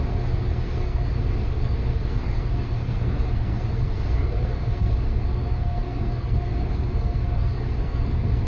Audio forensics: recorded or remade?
remade